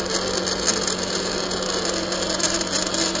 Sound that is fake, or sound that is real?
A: real